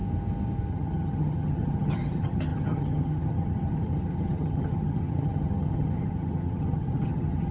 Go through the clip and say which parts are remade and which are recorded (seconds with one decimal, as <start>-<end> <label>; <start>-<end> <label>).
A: 0.0-0.7 recorded; 0.7-7.5 remade